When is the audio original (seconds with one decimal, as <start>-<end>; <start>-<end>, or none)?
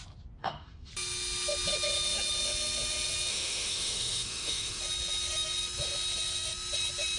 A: 0.0-0.4; 0.9-3.3; 4.8-7.2